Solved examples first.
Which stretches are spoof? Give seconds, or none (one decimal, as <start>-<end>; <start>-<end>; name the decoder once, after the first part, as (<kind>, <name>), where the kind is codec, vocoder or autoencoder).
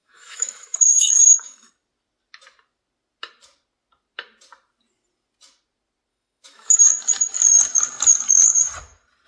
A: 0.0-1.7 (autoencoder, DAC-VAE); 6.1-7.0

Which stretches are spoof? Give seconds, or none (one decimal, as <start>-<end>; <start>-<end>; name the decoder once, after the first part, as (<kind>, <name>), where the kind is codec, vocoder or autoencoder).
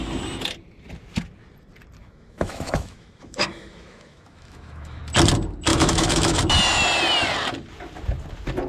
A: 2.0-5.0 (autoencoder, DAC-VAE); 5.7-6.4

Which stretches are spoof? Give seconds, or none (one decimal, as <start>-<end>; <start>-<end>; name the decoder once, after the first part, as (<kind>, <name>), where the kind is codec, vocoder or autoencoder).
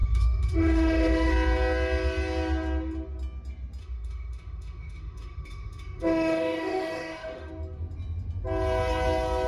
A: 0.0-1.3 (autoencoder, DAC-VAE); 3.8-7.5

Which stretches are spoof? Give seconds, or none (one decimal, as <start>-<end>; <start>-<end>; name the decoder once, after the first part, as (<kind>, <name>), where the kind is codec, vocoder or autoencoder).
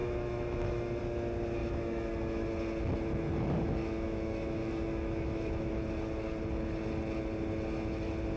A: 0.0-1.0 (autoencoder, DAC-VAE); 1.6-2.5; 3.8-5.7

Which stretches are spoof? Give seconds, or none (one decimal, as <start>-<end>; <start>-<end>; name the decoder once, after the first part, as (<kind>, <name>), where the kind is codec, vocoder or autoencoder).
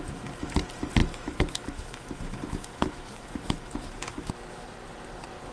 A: 1.0-4.3 (autoencoder, DAC-VAE)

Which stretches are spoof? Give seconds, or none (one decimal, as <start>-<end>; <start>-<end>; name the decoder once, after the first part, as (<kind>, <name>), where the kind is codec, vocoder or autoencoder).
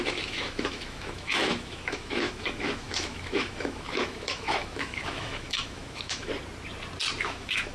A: 0.0-6.3 (autoencoder, DAC-VAE); 7.2-7.7